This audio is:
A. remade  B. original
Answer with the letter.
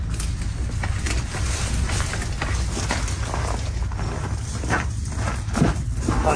B